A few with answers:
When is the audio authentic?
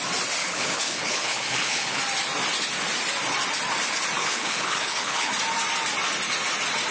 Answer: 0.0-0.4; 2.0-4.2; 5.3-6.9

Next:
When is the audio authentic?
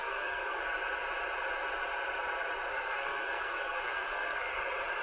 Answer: 0.6-2.7; 4.6-5.0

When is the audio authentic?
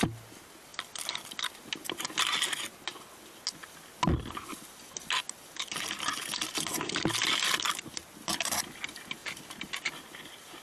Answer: 0.0-9.2; 10.0-10.6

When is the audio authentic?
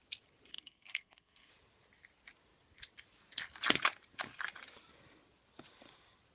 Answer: 0.0-0.5; 1.5-6.3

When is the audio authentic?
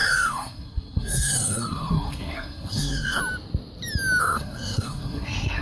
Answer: 3.2-4.2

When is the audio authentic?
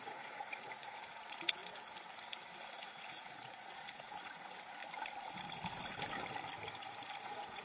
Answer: 1.6-2.9; 4.8-6.9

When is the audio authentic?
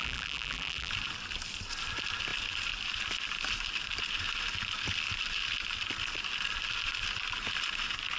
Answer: 0.9-8.2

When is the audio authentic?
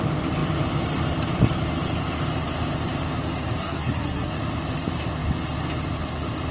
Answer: 0.0-3.6; 4.3-6.5